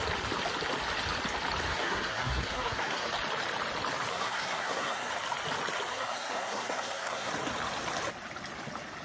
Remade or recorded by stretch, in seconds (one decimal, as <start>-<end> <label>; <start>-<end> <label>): 0.0-1.7 recorded; 1.7-3.1 remade; 3.1-4.1 recorded; 4.1-5.1 remade; 5.1-5.9 recorded; 5.9-7.3 remade; 7.3-9.0 recorded

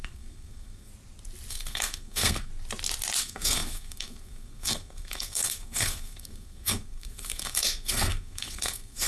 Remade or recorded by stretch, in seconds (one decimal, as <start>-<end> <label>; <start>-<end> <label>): 0.0-0.9 remade; 0.9-1.5 recorded; 1.5-2.5 remade; 2.5-3.2 recorded; 3.2-9.1 remade